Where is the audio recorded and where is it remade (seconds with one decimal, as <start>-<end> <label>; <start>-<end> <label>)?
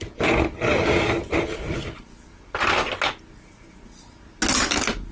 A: 0.0-5.1 recorded